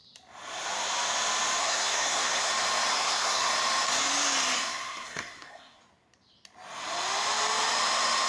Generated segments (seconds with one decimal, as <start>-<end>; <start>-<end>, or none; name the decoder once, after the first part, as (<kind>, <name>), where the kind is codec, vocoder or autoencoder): 1.6-2.5 (codec, SNAC); 2.9-3.5; 4.6-5.8